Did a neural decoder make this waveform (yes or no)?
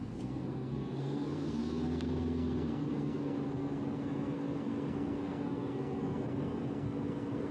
yes